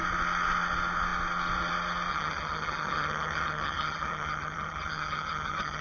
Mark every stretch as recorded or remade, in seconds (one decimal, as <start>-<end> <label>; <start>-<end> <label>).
0.0-2.1 recorded; 2.1-5.8 remade